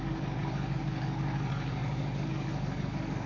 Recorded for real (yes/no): no